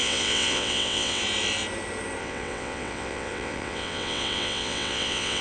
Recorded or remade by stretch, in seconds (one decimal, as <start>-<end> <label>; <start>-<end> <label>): 0.0-1.2 remade; 1.2-2.2 recorded; 2.2-5.4 remade

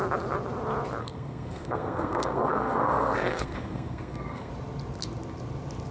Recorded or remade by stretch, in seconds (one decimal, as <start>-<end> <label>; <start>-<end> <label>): 0.0-1.0 recorded; 1.0-4.5 remade; 4.5-5.9 recorded

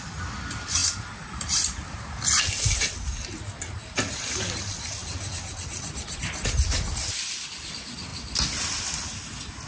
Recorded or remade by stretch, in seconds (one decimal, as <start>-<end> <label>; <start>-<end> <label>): 0.0-9.7 recorded